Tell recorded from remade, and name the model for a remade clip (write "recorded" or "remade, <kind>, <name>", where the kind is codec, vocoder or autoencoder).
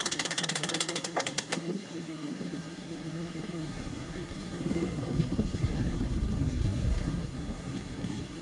remade, codec, SNAC